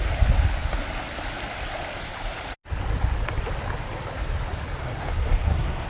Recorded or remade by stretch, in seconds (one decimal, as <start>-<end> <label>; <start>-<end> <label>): 0.0-4.8 recorded; 4.8-5.9 remade